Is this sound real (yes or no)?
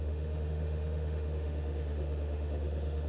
no